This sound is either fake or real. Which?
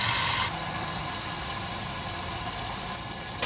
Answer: fake